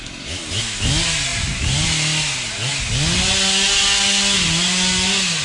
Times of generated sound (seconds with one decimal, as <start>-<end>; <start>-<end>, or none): none